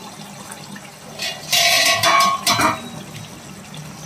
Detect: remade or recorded recorded